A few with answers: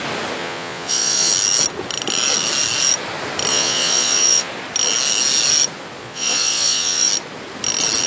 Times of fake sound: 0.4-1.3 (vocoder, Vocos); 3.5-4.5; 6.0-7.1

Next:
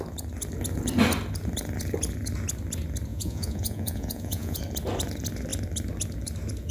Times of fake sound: 3.1-4.6 (vocoder, Vocos)